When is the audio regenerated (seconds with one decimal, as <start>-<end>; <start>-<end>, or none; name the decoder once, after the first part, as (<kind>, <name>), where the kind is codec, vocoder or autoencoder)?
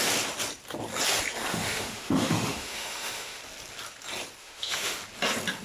1.5-3.4 (autoencoder, DAC-VAE); 4.4-5.0